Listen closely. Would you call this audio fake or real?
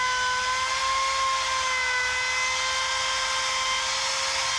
real